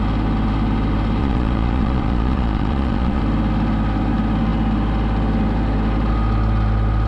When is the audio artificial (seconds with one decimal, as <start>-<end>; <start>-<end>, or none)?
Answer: 1.2-3.2